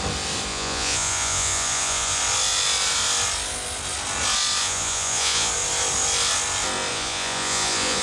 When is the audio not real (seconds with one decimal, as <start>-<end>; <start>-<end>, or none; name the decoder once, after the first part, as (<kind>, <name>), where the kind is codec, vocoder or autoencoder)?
0.5-2.2 (vocoder, Vocos); 4.6-5.5; 6.9-8.0